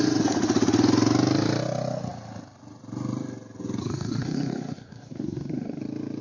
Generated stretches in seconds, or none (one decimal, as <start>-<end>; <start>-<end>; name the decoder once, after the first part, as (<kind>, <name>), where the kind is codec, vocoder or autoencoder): 3.8-5.8 (codec, SNAC)